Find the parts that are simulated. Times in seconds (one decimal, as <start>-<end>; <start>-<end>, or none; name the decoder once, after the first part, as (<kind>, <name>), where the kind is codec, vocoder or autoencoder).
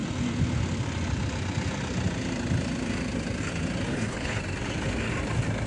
3.9-4.4 (codec, HILCodec)